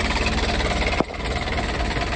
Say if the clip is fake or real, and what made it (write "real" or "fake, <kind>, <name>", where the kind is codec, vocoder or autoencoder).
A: real